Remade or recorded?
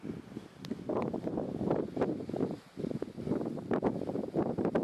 recorded